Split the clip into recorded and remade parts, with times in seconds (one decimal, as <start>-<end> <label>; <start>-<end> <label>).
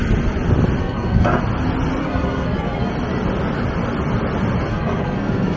0.0-0.8 recorded; 0.8-1.4 remade; 1.4-2.0 recorded; 2.0-2.9 remade; 2.9-4.7 recorded; 4.7-5.6 remade